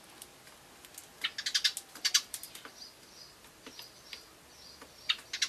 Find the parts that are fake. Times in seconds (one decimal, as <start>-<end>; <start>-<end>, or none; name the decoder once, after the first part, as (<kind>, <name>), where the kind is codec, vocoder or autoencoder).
none